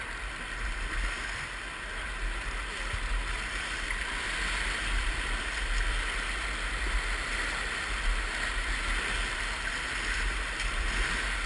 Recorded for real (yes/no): yes